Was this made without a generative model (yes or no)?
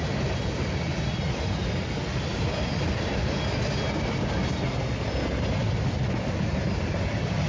yes